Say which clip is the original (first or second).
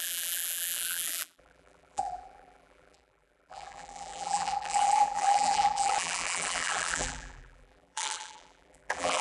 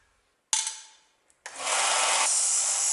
second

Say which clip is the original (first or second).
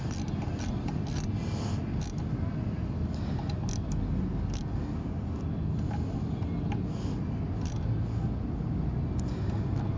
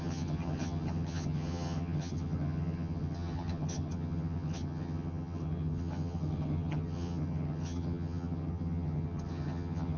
first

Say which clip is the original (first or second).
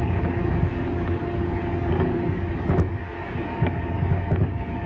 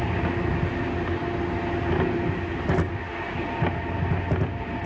second